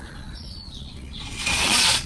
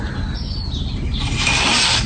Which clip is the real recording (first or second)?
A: second